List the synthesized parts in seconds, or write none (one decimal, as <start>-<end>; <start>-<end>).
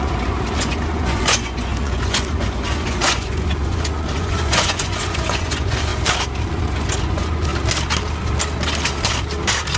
0.0-5.9; 6.5-7.5